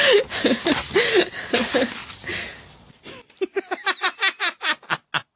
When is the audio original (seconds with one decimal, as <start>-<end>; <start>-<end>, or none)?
0.0-5.4